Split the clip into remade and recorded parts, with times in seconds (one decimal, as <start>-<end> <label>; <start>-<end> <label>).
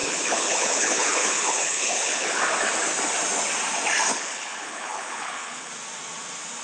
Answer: 0.0-2.4 remade; 2.4-4.1 recorded; 4.1-5.7 remade; 5.7-6.6 recorded